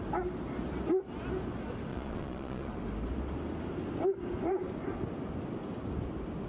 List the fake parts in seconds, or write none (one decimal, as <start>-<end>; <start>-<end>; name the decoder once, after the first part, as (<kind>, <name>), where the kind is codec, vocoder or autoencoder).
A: 1.9-2.7 (vocoder, Vocos)